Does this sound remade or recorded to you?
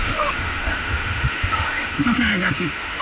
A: remade